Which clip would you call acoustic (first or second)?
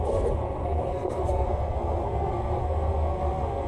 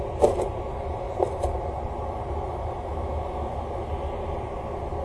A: second